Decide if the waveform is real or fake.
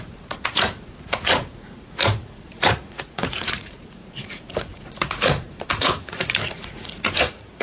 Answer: fake